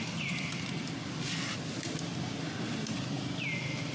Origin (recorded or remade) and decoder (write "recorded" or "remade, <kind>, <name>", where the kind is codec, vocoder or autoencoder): recorded